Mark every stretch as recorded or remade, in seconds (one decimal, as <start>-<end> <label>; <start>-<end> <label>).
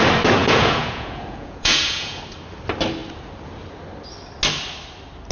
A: 0.0-0.4 recorded; 0.4-2.2 remade; 2.2-5.3 recorded